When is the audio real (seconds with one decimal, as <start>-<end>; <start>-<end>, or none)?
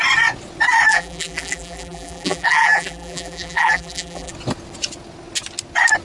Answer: 0.0-0.9; 4.3-6.0